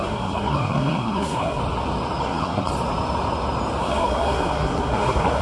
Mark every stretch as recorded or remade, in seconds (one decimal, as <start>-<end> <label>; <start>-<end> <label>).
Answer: 0.0-1.6 remade; 1.6-2.2 recorded; 2.2-2.7 remade; 2.7-3.8 recorded; 3.8-5.4 remade